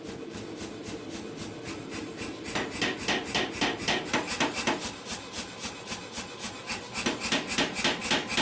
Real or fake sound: real